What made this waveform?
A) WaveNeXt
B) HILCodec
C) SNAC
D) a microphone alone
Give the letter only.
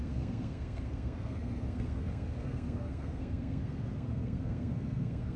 C